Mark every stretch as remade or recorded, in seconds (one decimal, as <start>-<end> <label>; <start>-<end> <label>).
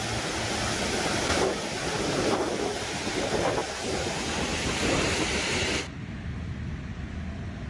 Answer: 0.0-7.7 recorded